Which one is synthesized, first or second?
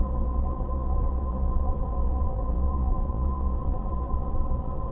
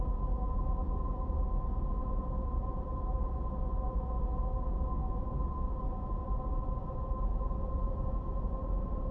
first